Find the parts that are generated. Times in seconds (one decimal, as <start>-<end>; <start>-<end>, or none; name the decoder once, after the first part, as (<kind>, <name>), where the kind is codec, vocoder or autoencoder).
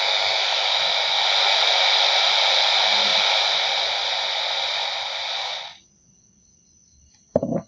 none